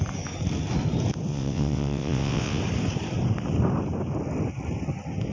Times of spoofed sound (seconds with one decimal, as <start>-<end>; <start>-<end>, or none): 1.3-2.6